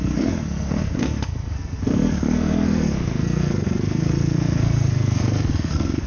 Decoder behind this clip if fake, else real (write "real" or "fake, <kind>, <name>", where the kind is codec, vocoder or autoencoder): fake, codec, SNAC